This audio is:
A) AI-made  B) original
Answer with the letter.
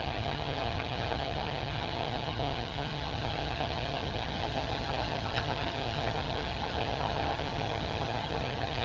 A